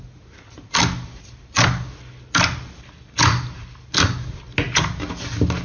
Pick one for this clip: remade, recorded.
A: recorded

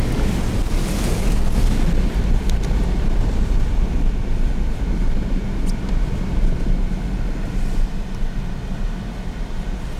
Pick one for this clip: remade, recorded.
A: recorded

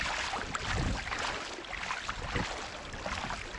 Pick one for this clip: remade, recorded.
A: recorded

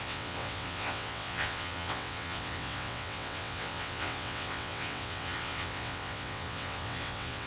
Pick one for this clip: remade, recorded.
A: remade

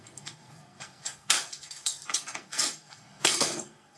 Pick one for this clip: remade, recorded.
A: remade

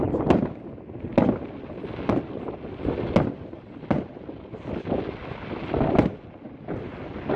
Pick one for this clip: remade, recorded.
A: recorded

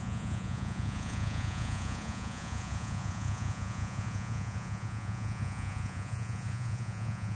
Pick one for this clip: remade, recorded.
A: remade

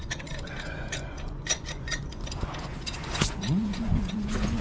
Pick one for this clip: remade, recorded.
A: remade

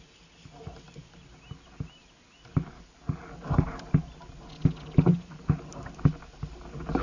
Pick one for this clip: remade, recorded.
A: recorded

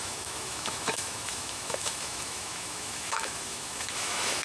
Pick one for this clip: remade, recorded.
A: remade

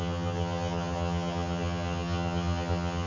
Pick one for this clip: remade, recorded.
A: remade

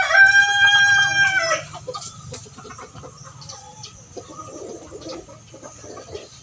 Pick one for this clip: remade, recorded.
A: remade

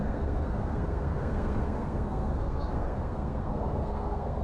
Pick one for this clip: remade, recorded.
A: remade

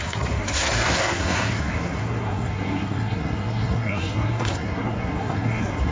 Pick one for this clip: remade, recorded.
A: remade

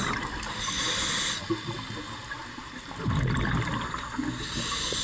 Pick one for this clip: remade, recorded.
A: recorded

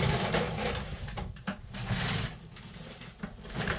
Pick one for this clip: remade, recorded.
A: recorded